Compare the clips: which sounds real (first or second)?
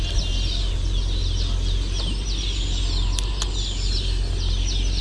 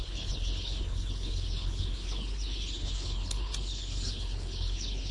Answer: first